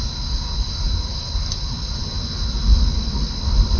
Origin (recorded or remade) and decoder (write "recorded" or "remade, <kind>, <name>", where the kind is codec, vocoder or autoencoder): recorded